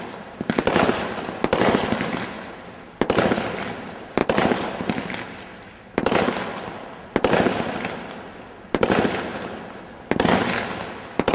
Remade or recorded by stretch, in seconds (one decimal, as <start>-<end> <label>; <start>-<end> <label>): 0.0-11.3 recorded